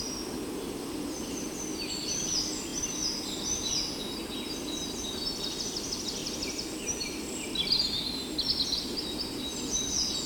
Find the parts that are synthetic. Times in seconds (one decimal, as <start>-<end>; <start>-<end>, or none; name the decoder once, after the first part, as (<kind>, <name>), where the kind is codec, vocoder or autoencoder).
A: none